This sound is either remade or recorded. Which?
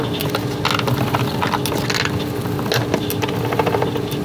recorded